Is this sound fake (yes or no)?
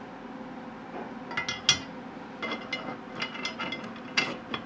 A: no